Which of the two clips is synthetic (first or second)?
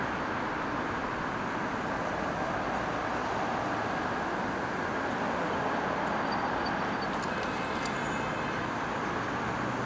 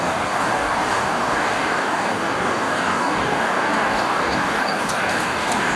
second